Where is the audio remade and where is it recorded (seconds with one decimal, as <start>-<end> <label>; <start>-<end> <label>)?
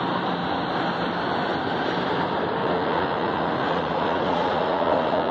0.0-2.6 recorded; 2.6-5.3 remade